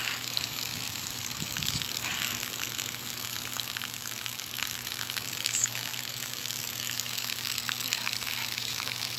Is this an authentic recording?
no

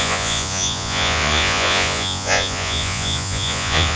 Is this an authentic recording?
no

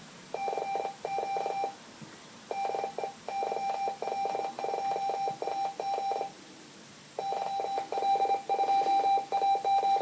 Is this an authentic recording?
yes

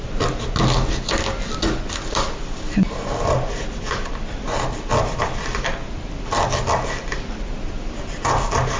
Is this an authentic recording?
yes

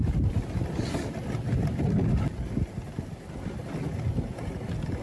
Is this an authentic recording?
yes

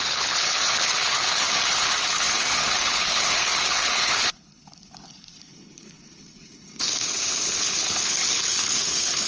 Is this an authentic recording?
no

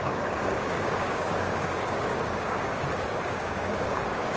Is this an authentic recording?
no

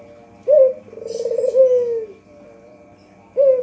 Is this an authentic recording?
yes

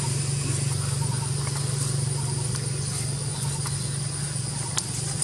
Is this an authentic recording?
yes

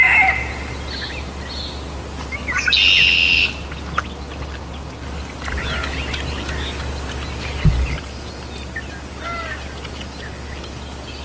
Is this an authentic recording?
yes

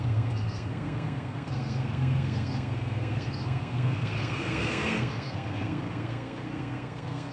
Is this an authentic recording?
no